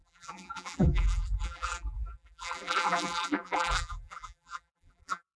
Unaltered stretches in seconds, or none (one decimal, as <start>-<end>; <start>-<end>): none